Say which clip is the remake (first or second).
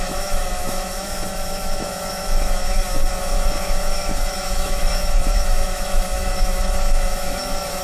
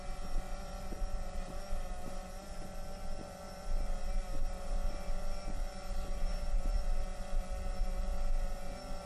first